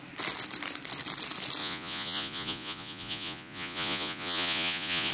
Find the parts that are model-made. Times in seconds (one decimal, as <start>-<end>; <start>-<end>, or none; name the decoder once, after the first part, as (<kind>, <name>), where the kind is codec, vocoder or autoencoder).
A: 1.6-5.1 (vocoder, Vocos)